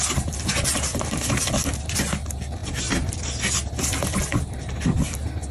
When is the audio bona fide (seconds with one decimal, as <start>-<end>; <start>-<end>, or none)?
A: 0.0-0.9; 1.5-2.6; 3.1-5.5